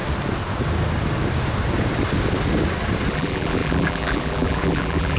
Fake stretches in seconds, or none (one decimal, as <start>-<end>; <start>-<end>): 3.1-5.2